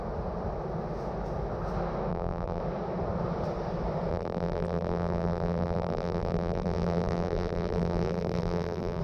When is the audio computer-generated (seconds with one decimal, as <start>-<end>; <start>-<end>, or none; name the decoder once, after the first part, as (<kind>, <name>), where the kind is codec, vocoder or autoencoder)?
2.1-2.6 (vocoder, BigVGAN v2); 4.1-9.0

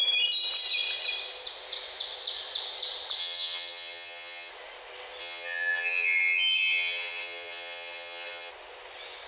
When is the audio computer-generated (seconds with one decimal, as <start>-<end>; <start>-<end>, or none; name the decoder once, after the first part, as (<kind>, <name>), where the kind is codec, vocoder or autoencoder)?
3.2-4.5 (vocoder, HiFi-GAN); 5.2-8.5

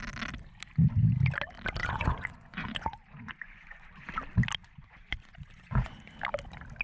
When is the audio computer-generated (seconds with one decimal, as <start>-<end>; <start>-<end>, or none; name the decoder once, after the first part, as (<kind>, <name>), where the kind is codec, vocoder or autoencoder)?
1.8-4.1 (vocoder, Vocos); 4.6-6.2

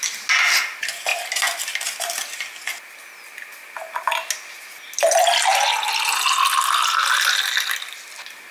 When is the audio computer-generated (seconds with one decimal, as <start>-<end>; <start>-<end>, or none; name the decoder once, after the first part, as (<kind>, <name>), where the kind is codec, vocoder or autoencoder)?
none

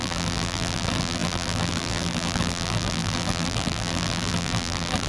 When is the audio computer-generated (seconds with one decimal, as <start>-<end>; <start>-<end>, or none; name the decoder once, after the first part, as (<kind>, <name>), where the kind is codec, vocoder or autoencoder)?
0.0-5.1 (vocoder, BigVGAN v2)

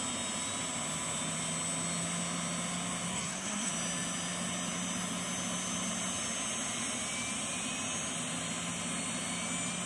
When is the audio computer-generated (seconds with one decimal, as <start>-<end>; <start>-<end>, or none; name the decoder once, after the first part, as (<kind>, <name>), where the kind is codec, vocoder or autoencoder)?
3.1-3.7 (codec, SNAC)

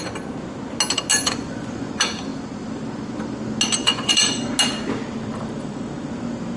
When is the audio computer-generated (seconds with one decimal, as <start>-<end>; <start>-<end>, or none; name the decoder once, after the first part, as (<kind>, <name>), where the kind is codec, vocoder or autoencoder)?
1.1-1.9 (vocoder, Vocos); 3.8-4.4

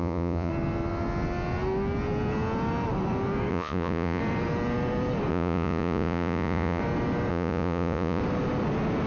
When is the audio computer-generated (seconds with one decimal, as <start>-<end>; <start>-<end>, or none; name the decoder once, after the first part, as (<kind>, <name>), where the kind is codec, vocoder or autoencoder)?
0.0-0.5 (vocoder, Vocos); 3.5-4.2; 5.3-6.8; 7.3-8.2